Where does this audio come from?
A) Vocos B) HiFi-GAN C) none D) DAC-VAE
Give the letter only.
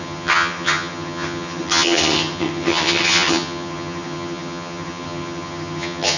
B